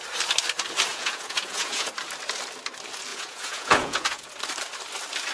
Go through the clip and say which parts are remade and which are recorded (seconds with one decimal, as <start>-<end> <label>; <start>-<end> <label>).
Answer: 0.0-0.9 recorded; 0.9-1.9 remade; 1.9-3.1 recorded; 3.1-4.3 remade; 4.3-5.3 recorded